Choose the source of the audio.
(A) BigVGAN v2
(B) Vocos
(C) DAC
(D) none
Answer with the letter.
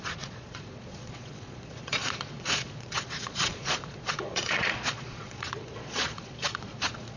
B